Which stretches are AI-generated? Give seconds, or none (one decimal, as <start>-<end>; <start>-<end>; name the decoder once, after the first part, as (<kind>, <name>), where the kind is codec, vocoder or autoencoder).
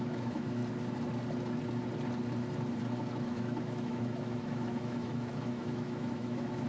0.0-0.6 (autoencoder, DAC-VAE); 3.2-6.7